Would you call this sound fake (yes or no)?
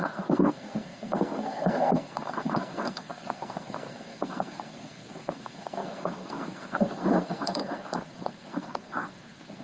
yes